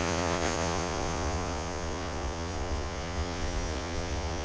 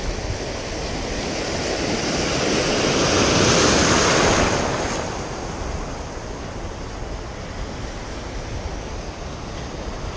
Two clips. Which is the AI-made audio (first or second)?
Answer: first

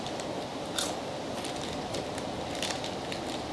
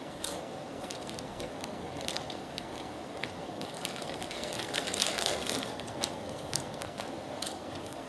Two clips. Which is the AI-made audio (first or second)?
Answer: second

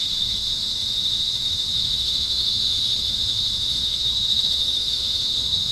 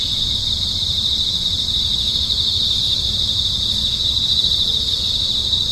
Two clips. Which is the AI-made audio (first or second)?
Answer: first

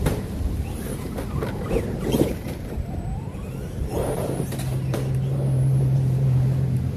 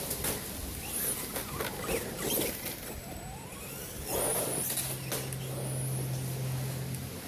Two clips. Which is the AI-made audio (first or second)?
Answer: first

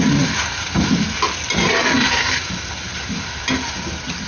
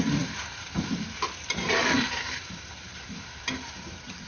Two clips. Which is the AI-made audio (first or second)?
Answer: second